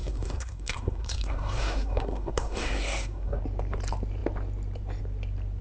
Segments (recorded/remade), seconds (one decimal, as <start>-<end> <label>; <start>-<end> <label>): 0.0-3.4 remade; 3.4-5.6 recorded